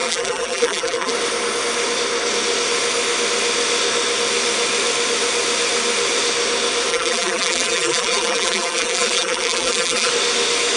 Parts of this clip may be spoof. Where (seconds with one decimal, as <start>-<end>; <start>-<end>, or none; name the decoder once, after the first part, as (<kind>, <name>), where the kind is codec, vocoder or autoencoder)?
0.0-1.1 (vocoder, BigVGAN v2); 6.9-10.1